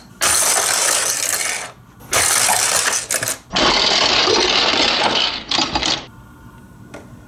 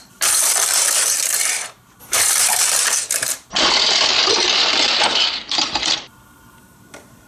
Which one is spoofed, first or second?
second